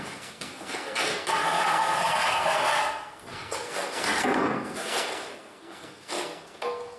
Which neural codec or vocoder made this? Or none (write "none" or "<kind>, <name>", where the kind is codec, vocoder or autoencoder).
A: codec, SNAC